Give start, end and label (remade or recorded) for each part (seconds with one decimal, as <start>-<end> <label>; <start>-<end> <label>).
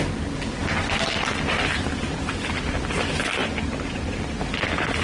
0.0-5.0 recorded